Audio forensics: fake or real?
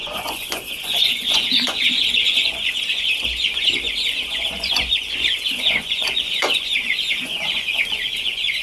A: fake